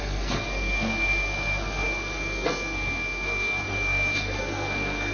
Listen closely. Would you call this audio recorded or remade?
remade